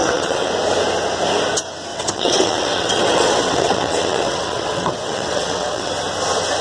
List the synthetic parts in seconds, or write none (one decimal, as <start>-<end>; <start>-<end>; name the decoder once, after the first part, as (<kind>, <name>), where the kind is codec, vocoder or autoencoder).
0.0-0.5 (vocoder, WaveNeXt); 1.9-5.9